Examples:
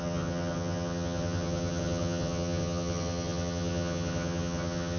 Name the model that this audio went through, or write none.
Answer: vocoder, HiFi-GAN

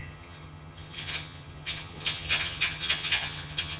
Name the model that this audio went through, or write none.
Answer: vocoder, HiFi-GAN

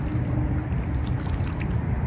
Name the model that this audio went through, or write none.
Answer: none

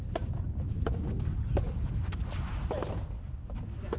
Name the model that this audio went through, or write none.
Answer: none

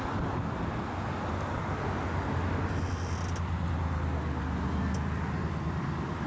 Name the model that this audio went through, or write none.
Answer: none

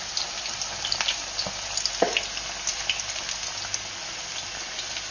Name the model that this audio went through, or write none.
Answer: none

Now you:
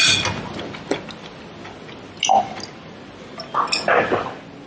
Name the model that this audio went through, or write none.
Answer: none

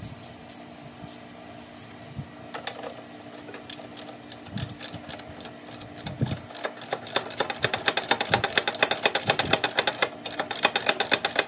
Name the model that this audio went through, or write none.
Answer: none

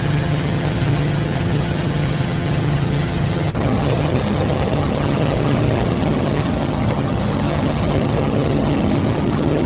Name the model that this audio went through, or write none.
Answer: vocoder, HiFi-GAN